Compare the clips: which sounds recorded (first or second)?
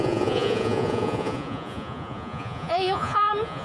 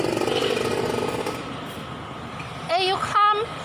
second